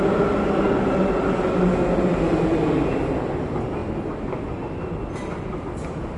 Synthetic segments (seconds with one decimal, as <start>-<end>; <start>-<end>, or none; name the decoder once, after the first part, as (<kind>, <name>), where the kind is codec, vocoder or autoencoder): none